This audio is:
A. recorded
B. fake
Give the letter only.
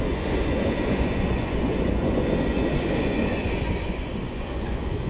B